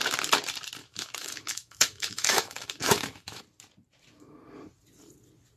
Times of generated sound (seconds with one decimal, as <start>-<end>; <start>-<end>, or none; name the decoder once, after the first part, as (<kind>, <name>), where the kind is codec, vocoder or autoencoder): 0.8-3.4 (autoencoder, DAC-VAE)